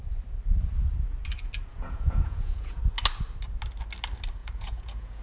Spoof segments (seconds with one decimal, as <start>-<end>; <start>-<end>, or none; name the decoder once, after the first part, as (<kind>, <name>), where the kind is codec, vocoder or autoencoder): 1.7-2.8 (vocoder, Vocos); 4.4-5.2